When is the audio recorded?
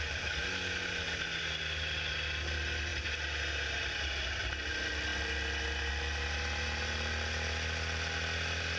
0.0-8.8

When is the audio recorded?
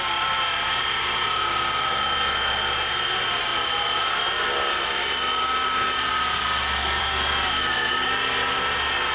0.0-9.1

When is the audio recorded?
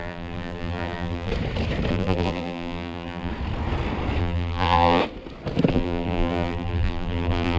1.3-1.9; 3.3-4.2; 5.0-5.7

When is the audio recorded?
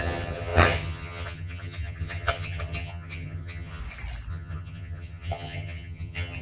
3.8-4.3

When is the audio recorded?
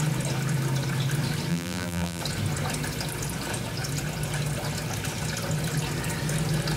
0.0-1.5; 2.2-6.8